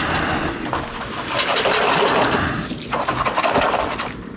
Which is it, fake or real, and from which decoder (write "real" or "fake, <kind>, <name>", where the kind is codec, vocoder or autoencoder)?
real